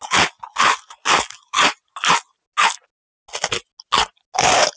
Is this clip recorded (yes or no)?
yes